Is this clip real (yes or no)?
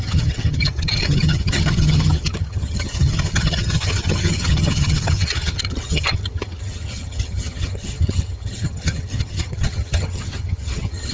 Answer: no